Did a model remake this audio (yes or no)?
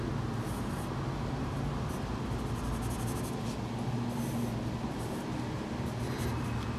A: no